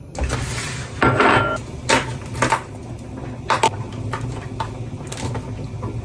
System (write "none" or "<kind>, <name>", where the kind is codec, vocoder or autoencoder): none